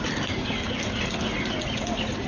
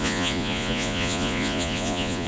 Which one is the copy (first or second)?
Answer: second